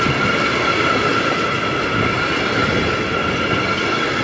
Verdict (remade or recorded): recorded